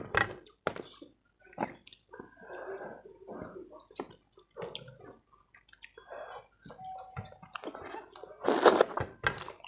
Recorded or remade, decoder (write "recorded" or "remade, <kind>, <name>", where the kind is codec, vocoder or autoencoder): recorded